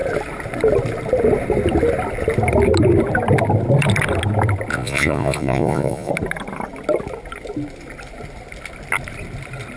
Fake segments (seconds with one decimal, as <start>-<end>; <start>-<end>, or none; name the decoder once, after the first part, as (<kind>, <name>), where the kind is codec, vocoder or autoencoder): 4.7-6.1 (vocoder, Vocos)